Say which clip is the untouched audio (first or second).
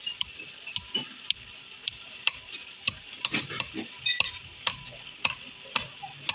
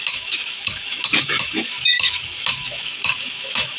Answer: first